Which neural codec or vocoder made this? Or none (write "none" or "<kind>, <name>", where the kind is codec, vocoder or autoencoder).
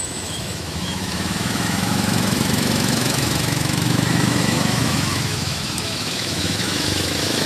autoencoder, DAC-VAE